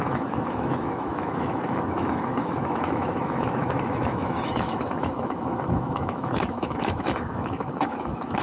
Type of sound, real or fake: fake